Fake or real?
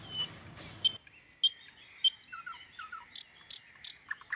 real